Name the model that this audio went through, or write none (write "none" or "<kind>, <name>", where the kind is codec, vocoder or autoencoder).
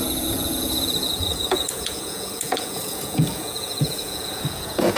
vocoder, Vocos